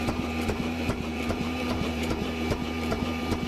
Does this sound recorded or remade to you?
remade